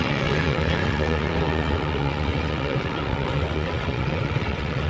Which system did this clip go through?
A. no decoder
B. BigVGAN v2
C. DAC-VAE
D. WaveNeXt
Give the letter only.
D